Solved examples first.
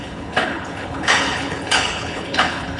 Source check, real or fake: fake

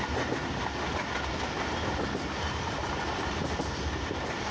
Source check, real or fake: real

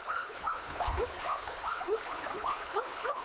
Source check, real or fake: fake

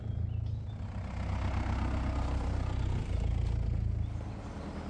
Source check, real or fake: real